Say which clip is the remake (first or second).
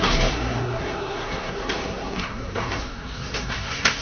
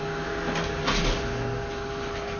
first